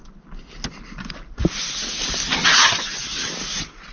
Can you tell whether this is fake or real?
real